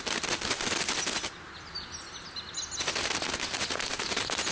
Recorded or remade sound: recorded